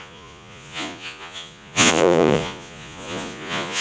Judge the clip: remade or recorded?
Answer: remade